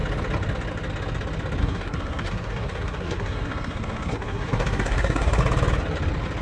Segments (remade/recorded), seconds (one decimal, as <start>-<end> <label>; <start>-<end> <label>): 0.0-1.6 recorded; 1.6-5.4 remade; 5.4-6.4 recorded